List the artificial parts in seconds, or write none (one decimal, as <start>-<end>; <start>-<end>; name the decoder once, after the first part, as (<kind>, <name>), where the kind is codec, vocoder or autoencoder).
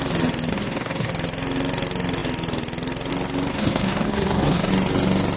0.5-1.1 (codec, SNAC); 3.5-4.7